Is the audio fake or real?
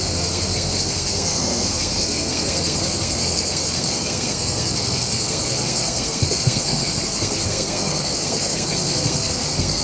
fake